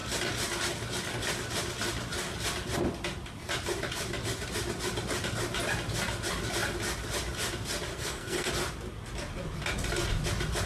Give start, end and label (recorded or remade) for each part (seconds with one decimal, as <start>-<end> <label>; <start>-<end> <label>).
0.0-7.9 recorded; 7.9-8.5 remade; 8.5-10.7 recorded